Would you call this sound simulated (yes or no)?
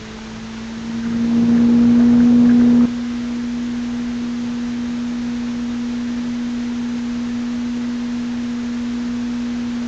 no